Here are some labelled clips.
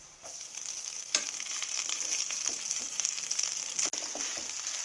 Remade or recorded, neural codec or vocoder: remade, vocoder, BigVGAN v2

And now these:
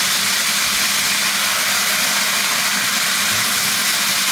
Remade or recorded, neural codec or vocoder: recorded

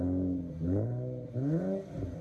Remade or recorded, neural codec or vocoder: recorded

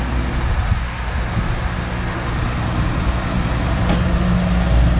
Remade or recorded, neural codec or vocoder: recorded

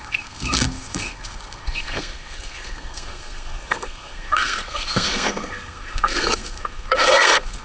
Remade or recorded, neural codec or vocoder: remade, codec, SNAC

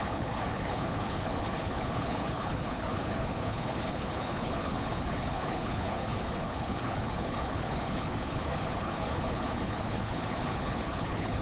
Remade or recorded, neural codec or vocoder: remade, codec, HILCodec